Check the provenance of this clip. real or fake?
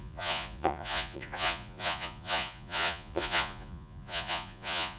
fake